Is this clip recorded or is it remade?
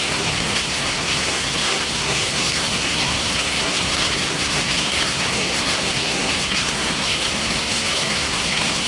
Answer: remade